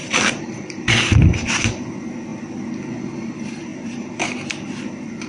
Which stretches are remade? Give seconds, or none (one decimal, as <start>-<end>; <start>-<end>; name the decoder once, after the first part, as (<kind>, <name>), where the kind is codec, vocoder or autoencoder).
0.0-1.9 (vocoder, BigVGAN v2); 3.7-4.8